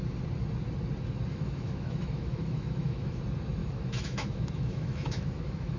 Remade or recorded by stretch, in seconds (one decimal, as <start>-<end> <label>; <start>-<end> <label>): 0.0-1.3 recorded; 1.3-3.2 remade; 3.2-3.6 recorded; 3.6-5.8 remade